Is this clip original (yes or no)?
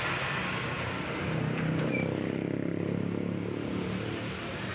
yes